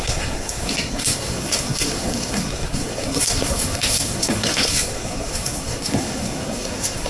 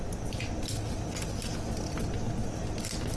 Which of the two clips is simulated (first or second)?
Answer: first